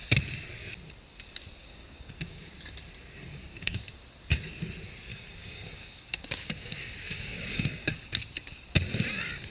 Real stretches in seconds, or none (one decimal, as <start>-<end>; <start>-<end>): 0.0-1.6; 2.5-3.3; 3.8-5.1; 8.2-9.5